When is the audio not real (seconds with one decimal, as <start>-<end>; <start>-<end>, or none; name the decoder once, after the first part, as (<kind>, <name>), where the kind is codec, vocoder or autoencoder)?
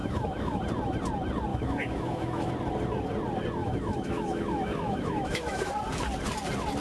0.0-0.6 (autoencoder, DAC-VAE); 1.5-2.5; 3.6-5.7